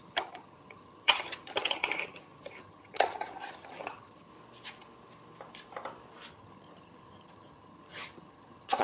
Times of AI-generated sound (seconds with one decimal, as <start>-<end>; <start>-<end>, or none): 0.0-4.3; 6.3-8.8